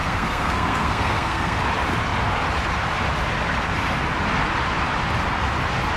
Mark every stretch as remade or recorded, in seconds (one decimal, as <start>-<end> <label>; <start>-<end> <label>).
0.0-1.6 remade; 1.6-6.0 recorded